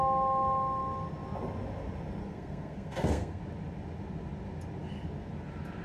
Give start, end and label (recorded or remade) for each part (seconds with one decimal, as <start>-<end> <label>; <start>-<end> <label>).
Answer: 0.0-2.2 recorded; 2.2-3.4 remade; 3.4-5.8 recorded